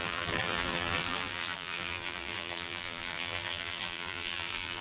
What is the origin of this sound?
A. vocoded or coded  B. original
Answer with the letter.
A